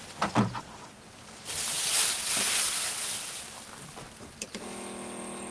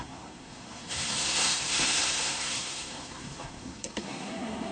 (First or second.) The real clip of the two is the first